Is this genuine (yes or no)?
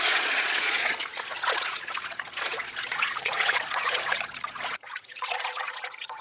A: no